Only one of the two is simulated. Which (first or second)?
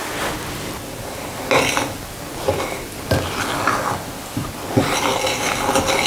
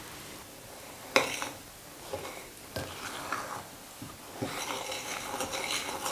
second